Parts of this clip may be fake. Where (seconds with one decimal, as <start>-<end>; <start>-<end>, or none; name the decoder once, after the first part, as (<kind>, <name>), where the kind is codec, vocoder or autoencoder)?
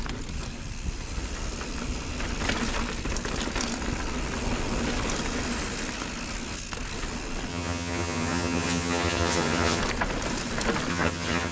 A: 7.5-9.8 (vocoder, HiFi-GAN); 10.9-11.5